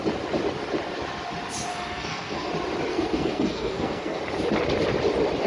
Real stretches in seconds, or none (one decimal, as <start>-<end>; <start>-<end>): 0.0-1.7; 2.5-2.9; 4.2-5.5